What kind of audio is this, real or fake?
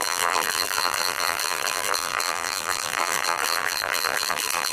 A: fake